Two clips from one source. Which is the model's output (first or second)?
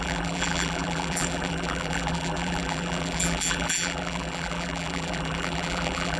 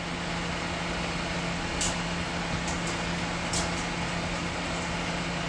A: first